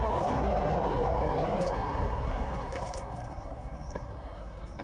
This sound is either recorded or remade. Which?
remade